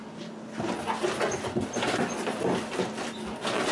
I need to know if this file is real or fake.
real